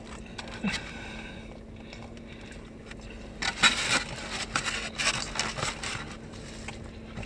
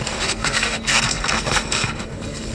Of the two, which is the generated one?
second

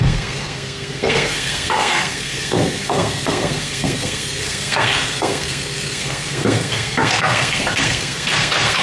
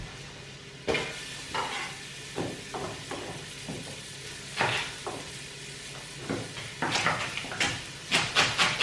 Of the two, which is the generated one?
first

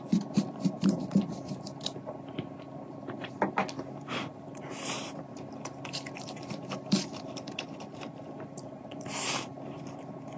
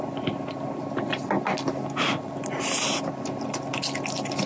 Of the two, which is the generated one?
first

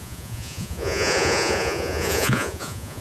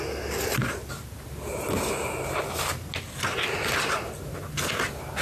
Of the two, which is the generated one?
first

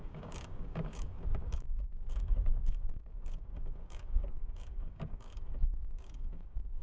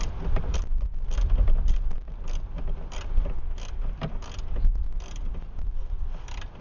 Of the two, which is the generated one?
first